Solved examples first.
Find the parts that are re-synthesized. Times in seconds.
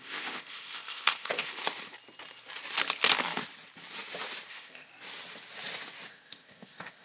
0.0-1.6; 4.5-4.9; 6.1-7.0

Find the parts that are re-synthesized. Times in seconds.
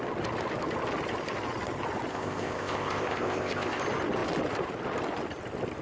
2.1-3.8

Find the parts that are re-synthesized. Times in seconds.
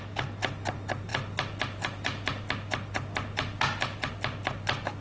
none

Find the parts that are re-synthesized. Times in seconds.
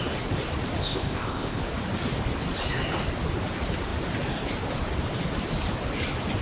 0.8-1.6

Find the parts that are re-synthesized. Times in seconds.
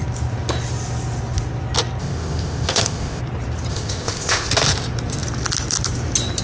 2.0-3.2; 3.7-4.5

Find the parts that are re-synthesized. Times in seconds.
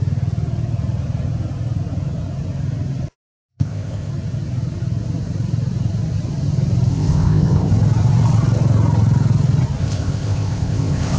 3.5-4.1; 6.9-7.7; 9.8-11.2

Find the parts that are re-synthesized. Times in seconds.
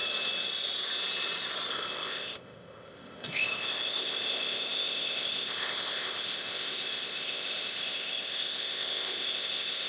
1.7-9.9